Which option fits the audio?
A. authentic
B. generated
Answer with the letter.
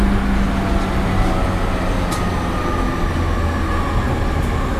A